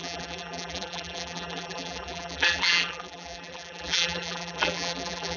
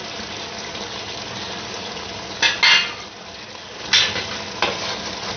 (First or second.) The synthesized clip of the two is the first